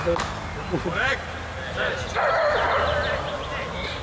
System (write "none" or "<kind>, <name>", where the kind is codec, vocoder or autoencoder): none